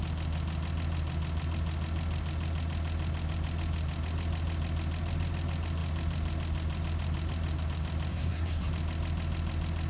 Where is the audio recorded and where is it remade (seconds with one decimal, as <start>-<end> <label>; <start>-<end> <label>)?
0.0-8.1 recorded; 8.1-8.7 remade; 8.7-9.9 recorded